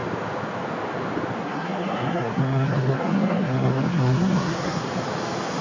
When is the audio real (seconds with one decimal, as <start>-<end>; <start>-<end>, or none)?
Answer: 0.0-1.4; 4.8-5.6